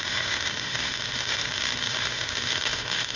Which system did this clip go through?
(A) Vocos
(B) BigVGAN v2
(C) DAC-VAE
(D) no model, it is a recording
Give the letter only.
C